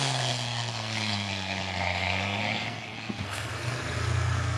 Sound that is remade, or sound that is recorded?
remade